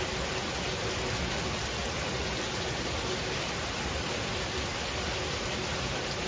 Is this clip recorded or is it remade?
recorded